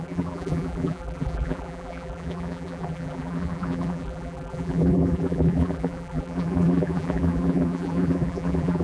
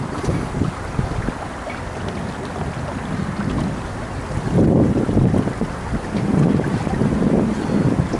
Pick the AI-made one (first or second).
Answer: first